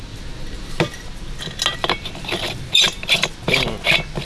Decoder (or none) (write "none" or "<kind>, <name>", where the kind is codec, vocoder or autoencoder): none